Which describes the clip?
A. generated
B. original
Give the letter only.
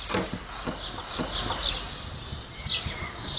B